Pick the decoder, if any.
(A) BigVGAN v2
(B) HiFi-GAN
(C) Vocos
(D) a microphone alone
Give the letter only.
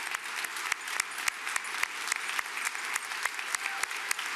D